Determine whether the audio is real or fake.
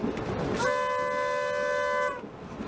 real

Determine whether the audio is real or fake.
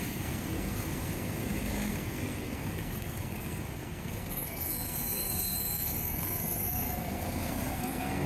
fake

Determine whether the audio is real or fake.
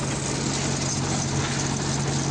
real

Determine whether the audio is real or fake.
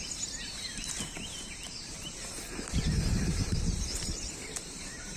fake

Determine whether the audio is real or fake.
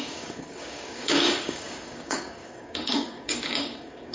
fake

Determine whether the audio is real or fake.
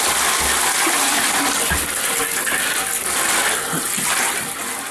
real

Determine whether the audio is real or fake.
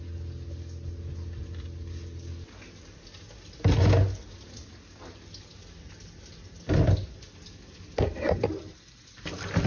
real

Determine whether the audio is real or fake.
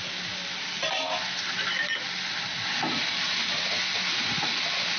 real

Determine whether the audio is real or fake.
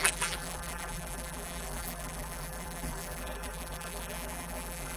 fake